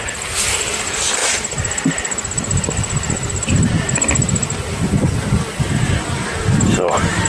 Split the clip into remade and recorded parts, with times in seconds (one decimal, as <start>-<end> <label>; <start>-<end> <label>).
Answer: 0.0-7.3 recorded